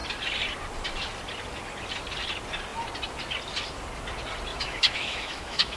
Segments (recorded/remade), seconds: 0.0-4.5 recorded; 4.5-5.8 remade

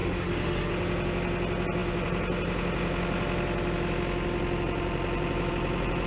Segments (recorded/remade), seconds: 0.0-0.7 remade; 0.7-6.1 recorded

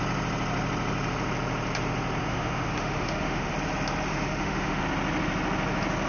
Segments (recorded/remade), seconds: 0.0-2.2 recorded; 2.2-3.5 remade; 3.5-4.1 recorded; 4.1-4.8 remade; 4.8-6.1 recorded

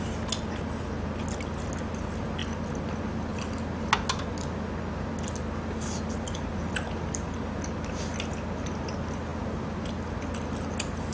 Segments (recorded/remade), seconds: 0.0-11.1 recorded

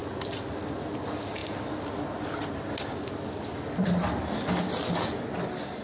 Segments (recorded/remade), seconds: 0.0-5.8 recorded

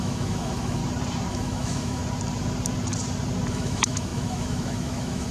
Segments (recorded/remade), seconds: 0.0-0.8 remade; 0.8-1.3 recorded; 1.3-2.0 remade; 2.0-3.5 recorded; 3.5-5.3 remade

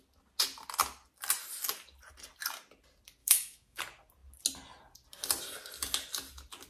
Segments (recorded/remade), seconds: 0.0-3.2 recorded; 3.2-3.8 remade; 3.8-6.7 recorded

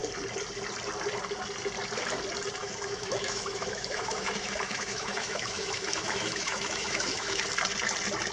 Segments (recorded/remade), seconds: 0.0-2.6 recorded; 2.6-7.4 remade; 7.4-8.3 recorded